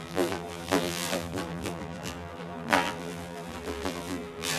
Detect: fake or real fake